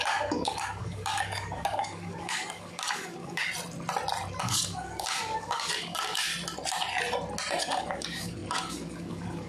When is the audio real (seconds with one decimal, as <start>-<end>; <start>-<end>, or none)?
3.5-4.4; 6.3-7.6